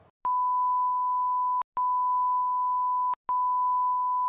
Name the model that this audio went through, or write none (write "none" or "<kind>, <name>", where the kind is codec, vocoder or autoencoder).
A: none